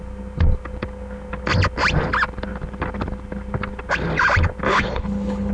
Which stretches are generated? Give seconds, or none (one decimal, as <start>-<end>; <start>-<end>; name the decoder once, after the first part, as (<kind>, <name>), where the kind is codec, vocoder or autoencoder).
4.7-5.5 (codec, HILCodec)